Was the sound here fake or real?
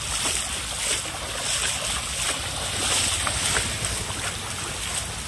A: real